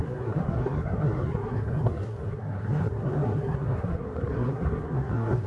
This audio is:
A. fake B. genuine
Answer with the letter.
A